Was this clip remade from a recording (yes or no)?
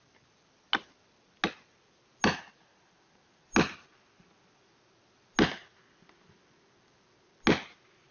no